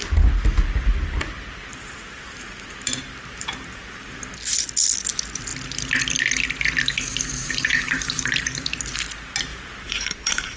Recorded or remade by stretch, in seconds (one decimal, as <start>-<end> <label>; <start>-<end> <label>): 0.0-1.7 recorded; 1.7-4.2 remade; 4.2-7.4 recorded; 7.4-8.8 remade; 8.8-9.5 recorded; 9.5-10.6 remade